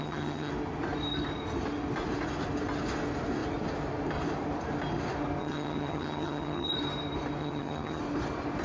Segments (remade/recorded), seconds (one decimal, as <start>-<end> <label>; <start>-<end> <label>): 0.0-0.5 remade; 0.5-5.4 recorded; 5.4-6.7 remade; 6.7-7.4 recorded; 7.4-8.0 remade; 8.0-8.6 recorded